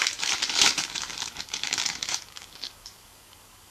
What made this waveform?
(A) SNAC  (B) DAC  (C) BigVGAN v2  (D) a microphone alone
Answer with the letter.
B